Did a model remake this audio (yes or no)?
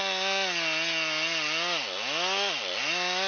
no